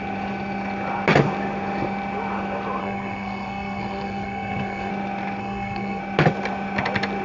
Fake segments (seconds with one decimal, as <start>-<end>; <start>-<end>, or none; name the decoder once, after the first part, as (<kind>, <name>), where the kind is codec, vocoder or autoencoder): 2.8-4.9 (codec, SNAC); 5.4-6.0